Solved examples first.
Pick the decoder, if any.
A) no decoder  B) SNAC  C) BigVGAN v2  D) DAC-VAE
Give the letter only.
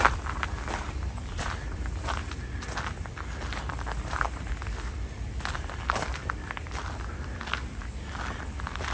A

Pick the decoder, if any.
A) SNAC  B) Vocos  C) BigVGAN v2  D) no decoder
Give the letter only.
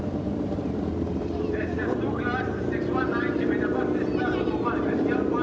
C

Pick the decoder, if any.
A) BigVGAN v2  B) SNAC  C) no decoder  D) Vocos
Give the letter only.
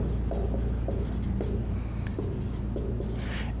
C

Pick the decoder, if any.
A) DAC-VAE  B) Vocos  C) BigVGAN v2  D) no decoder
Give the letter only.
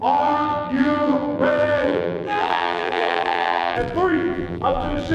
C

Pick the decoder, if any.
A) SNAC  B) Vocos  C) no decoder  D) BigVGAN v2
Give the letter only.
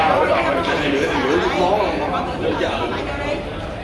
D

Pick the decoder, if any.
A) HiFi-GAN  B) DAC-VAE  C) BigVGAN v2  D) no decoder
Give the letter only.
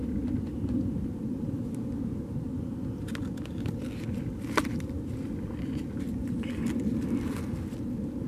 D